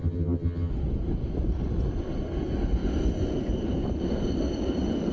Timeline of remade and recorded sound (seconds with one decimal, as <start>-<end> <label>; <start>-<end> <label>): 0.0-0.7 remade; 0.7-5.1 recorded